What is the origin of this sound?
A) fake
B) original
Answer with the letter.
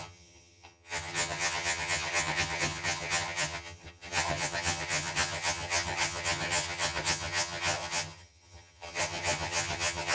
A